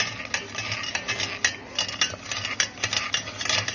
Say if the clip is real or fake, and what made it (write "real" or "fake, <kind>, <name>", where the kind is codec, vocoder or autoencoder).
real